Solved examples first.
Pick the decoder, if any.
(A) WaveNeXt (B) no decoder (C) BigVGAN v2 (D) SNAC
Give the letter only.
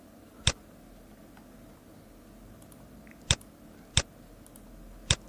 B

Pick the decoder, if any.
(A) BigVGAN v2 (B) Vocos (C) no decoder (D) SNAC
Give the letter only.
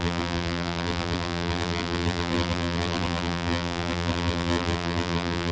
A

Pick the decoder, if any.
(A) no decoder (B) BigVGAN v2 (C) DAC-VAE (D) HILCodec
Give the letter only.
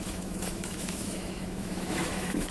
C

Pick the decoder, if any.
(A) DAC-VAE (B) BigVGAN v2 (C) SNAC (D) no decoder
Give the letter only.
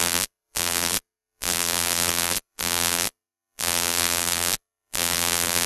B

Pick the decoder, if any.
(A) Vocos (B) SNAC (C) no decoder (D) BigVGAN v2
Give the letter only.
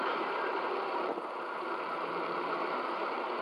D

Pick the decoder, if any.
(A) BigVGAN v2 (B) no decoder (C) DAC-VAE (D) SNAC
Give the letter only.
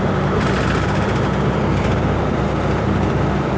A